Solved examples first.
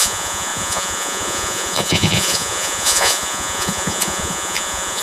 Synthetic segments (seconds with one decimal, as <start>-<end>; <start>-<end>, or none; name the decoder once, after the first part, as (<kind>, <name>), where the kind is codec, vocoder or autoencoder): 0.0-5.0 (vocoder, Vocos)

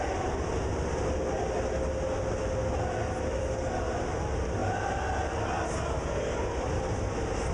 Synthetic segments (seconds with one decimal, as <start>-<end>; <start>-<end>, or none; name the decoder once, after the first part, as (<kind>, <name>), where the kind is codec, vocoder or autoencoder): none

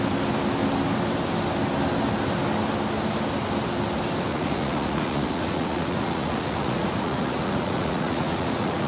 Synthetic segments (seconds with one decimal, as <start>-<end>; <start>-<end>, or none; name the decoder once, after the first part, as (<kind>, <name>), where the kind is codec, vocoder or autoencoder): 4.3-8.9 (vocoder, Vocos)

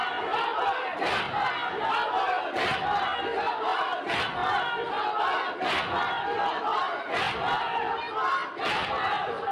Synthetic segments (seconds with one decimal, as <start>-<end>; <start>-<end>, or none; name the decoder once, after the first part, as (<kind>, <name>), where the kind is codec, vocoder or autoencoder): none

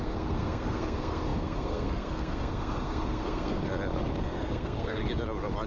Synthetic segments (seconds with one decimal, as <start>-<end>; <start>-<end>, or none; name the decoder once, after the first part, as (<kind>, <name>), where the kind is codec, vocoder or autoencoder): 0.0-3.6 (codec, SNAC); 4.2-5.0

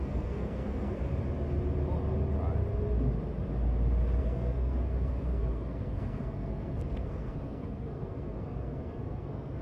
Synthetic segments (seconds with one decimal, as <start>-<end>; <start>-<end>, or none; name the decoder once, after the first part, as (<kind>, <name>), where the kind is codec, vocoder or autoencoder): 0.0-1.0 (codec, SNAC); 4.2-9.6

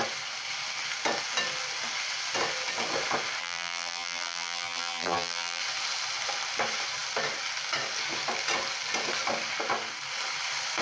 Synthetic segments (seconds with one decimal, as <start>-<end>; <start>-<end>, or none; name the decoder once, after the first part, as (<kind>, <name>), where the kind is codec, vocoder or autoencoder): 3.4-5.6 (vocoder, BigVGAN v2)

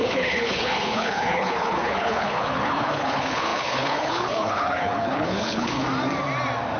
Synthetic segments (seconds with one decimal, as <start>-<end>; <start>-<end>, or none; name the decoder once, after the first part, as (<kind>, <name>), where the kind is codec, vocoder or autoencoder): 0.0-5.8 (codec, HILCodec)